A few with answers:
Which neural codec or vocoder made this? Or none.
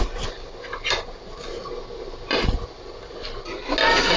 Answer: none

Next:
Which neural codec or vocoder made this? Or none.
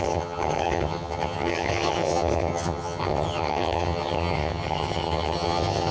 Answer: vocoder, HiFi-GAN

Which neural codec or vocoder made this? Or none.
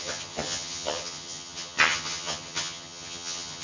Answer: vocoder, HiFi-GAN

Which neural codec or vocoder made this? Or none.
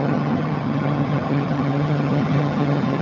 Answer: vocoder, HiFi-GAN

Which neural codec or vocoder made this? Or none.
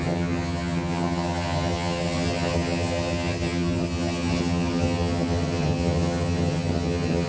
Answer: vocoder, HiFi-GAN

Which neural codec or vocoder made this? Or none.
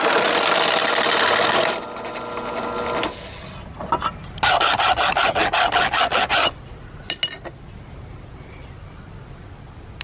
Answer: none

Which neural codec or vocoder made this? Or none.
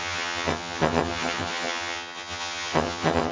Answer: vocoder, HiFi-GAN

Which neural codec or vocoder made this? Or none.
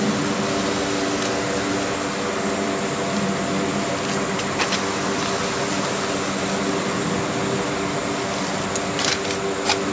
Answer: none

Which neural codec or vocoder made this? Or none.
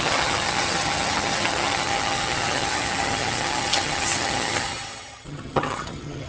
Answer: vocoder, HiFi-GAN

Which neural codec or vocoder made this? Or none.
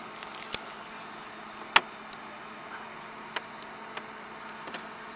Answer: none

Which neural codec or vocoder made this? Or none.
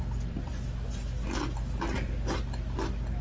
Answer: none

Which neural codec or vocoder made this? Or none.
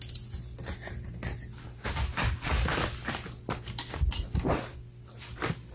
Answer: none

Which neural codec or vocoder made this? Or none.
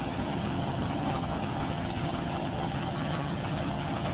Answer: vocoder, HiFi-GAN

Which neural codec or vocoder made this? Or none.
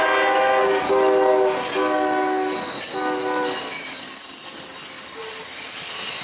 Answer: none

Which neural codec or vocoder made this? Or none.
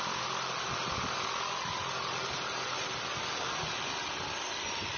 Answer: none